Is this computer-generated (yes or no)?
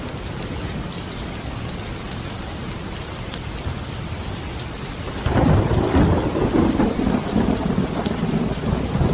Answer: no